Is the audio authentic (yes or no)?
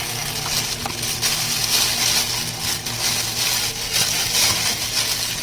yes